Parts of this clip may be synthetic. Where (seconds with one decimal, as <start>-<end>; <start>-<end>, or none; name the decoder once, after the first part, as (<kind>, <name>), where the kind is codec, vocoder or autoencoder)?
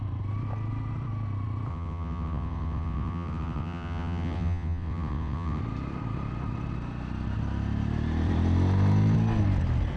1.7-5.6 (vocoder, WaveNeXt)